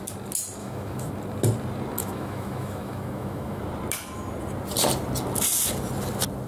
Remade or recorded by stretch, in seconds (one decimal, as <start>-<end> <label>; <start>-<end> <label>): 0.0-0.6 recorded; 0.6-1.1 remade; 1.1-2.0 recorded; 2.0-3.6 remade; 3.6-6.5 recorded